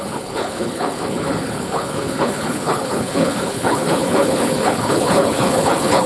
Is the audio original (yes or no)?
no